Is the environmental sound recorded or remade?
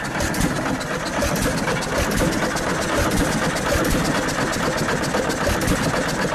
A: recorded